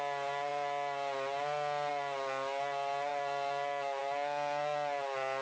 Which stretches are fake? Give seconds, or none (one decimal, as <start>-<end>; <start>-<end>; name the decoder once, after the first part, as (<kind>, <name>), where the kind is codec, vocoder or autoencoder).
none